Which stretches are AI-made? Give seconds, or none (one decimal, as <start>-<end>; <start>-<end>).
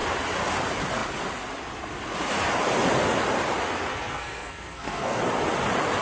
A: 3.9-5.2